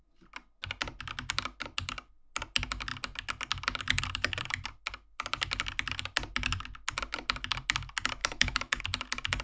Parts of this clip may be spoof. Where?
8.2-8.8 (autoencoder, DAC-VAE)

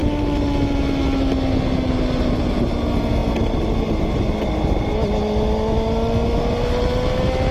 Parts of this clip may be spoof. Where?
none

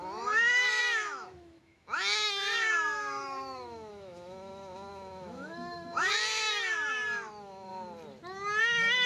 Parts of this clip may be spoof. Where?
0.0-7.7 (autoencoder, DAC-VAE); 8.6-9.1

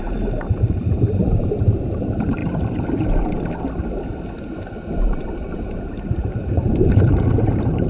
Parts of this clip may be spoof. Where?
0.0-2.4 (vocoder, BigVGAN v2); 5.6-7.9

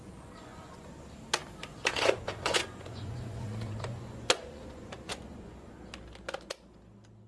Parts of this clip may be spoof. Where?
0.0-0.9 (vocoder, Vocos); 1.7-5.7

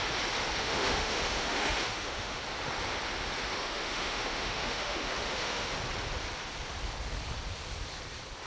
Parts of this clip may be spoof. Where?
0.6-2.4 (autoencoder, DAC-VAE); 3.6-5.7

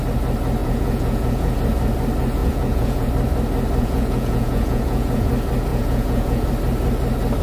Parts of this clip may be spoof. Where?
0.6-1.5 (vocoder, Vocos); 2.4-3.1; 3.8-5.3; 5.7-6.5

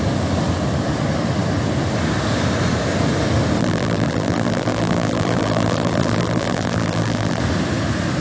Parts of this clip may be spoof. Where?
3.6-7.4 (vocoder, BigVGAN v2)